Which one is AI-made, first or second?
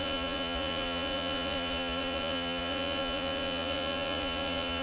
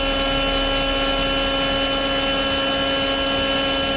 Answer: first